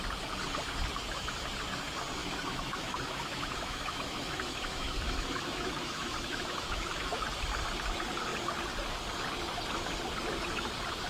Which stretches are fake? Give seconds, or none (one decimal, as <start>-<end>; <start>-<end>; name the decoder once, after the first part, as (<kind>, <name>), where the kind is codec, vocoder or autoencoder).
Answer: 2.2-7.2 (autoencoder, DAC-VAE)